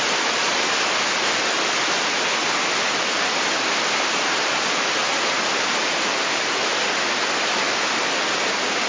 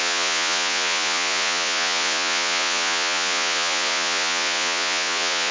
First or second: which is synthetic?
second